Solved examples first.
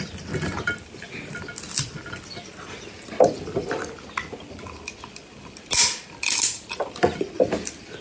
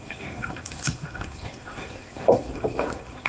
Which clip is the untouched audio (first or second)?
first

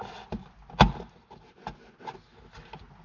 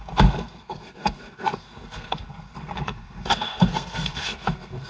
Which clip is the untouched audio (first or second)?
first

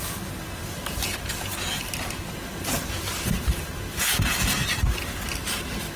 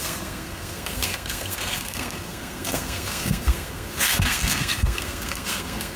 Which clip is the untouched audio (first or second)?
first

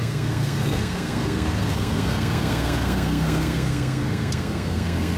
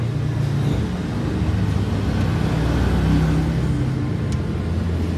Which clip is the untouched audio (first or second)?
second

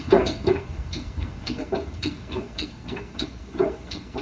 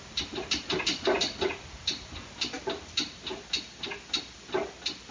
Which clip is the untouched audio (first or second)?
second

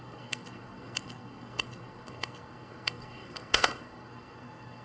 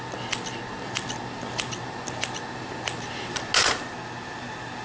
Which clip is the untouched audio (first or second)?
second